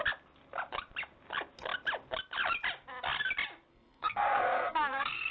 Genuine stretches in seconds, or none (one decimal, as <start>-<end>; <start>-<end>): 0.0-3.7